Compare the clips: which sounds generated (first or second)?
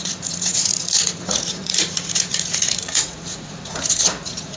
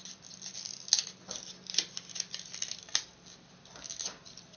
first